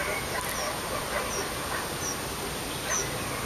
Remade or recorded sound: recorded